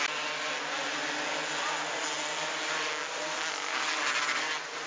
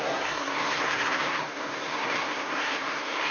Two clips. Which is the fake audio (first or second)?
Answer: second